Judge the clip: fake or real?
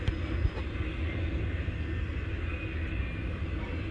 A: real